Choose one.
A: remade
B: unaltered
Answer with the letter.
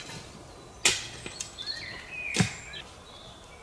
B